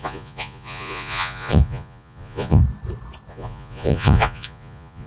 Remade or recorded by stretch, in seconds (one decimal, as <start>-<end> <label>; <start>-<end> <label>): 0.0-2.6 remade; 2.6-3.3 recorded; 3.3-5.1 remade